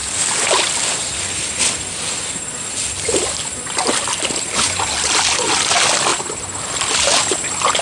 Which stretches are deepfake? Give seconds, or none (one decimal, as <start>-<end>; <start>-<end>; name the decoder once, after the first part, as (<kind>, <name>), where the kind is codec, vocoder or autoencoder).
none